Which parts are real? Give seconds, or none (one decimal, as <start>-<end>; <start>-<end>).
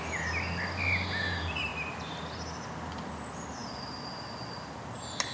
0.0-5.3